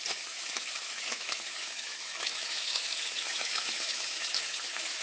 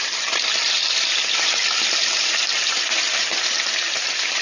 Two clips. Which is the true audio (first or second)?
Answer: second